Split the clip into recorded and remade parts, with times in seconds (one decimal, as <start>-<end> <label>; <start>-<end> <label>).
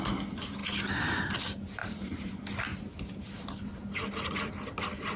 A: 0.0-1.8 recorded; 1.8-2.3 remade; 2.3-2.7 recorded; 2.7-3.7 remade; 3.7-5.2 recorded